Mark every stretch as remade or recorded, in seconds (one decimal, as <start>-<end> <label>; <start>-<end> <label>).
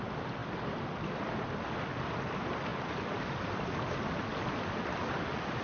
0.0-5.6 recorded